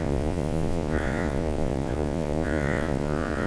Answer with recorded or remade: remade